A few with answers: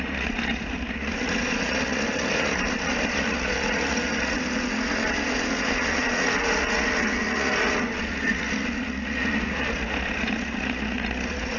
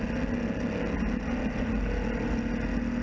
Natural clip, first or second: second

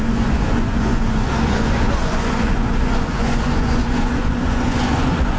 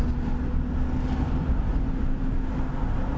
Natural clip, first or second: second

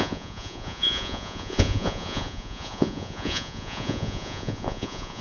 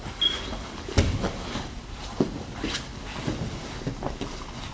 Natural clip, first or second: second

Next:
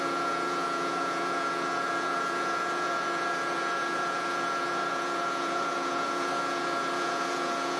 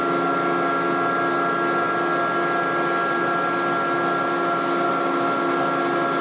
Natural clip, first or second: second